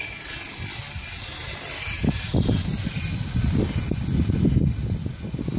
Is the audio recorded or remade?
recorded